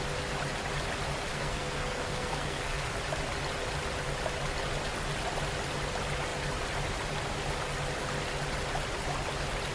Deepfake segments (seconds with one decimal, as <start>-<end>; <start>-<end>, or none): 1.3-2.9

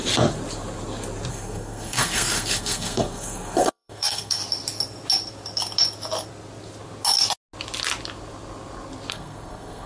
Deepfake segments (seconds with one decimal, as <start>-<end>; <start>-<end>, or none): 1.3-4.4; 9.1-9.9

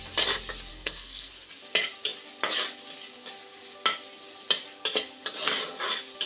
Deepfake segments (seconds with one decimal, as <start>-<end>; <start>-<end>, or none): 0.7-1.3

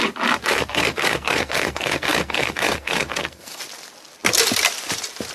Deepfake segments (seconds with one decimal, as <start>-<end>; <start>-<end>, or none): 0.4-3.6

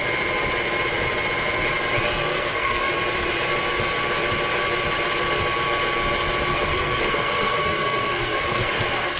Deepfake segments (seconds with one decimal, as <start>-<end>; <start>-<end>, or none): 2.3-2.9; 6.5-9.2